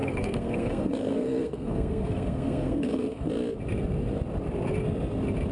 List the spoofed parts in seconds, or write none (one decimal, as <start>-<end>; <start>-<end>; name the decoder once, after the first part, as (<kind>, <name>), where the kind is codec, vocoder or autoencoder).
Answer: 0.0-3.3 (codec, SNAC)